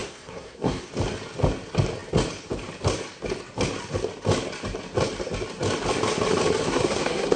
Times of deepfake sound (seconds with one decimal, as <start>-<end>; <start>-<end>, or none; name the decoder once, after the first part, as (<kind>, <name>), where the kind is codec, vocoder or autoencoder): 0.0-0.9 (codec, SNAC); 6.7-7.4